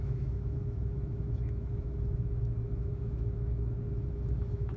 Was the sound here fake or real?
fake